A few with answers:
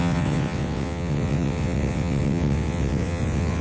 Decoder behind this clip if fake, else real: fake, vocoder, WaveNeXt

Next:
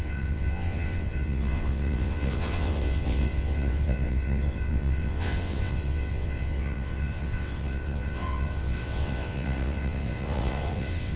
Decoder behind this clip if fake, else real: fake, vocoder, WaveNeXt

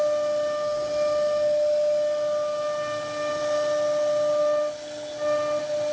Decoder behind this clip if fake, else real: real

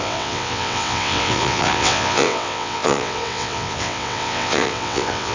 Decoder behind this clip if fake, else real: fake, vocoder, WaveNeXt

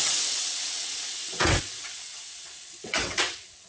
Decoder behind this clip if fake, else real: fake, vocoder, WaveNeXt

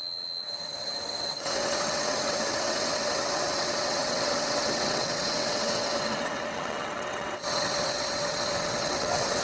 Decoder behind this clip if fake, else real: fake, vocoder, WaveNeXt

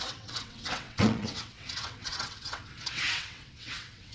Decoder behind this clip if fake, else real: fake, vocoder, WaveNeXt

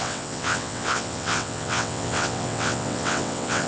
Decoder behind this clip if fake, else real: fake, vocoder, WaveNeXt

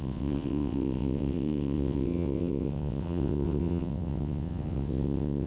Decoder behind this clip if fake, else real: fake, vocoder, WaveNeXt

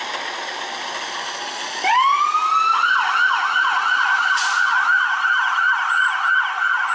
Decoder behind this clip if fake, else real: real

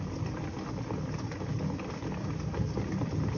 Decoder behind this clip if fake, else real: real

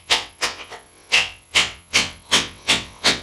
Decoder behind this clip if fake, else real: fake, vocoder, WaveNeXt